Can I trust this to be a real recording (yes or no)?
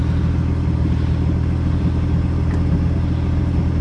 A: yes